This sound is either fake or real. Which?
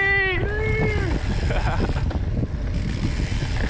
real